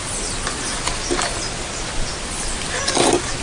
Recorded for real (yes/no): yes